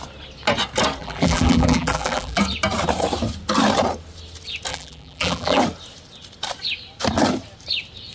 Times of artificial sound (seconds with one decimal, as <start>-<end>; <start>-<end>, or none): 1.0-2.4; 4.7-5.6